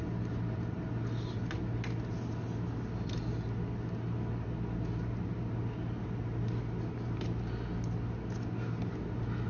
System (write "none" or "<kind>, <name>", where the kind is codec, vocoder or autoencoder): none